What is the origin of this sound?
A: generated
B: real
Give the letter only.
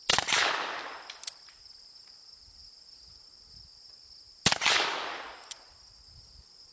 B